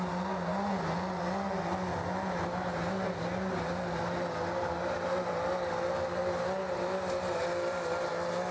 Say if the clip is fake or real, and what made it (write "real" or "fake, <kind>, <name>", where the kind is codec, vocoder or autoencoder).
real